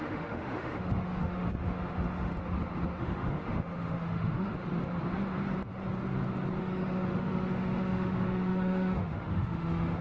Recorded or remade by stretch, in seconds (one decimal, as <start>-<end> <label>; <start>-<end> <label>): 0.0-2.3 remade; 2.3-3.0 recorded; 3.0-4.5 remade; 4.5-6.6 recorded; 6.6-10.0 remade